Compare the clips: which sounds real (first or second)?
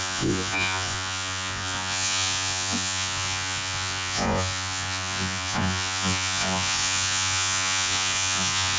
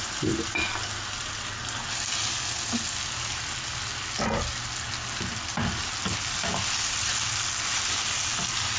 second